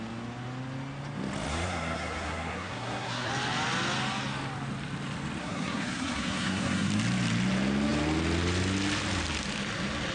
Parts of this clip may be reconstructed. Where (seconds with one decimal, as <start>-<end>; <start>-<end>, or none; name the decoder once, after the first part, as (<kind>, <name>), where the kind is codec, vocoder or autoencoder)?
1.5-3.3 (codec, SNAC); 5.4-6.9